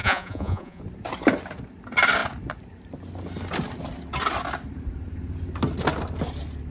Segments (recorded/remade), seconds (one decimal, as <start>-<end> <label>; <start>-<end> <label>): 0.0-0.8 remade; 0.8-6.7 recorded